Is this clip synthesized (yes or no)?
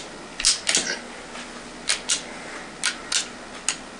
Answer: no